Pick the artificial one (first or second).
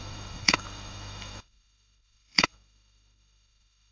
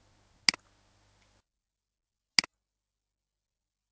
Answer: first